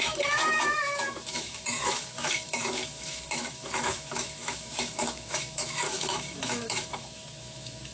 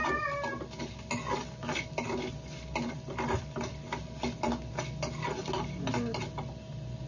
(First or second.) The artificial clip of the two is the first